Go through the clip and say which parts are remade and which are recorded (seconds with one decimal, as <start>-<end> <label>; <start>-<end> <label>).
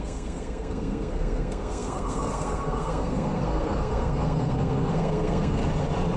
0.0-5.6 remade; 5.6-6.2 recorded